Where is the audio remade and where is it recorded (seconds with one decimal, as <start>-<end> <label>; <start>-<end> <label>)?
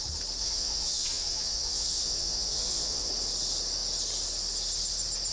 0.0-0.4 recorded; 0.4-3.1 remade; 3.1-5.3 recorded